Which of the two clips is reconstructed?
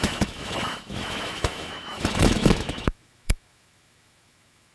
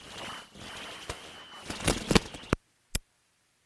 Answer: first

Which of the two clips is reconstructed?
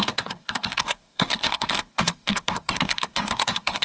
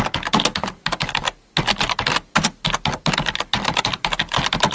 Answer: first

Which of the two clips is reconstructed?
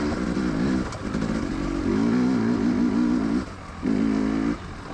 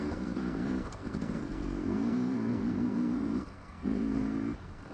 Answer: second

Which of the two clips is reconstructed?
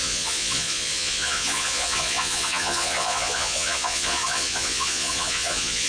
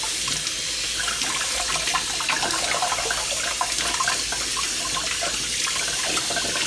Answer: first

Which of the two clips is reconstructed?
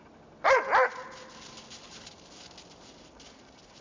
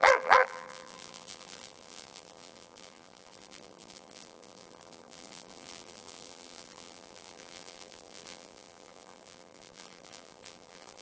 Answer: second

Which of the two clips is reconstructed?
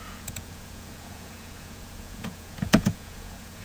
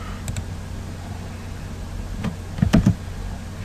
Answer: first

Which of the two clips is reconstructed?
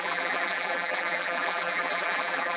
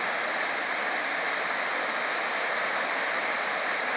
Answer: first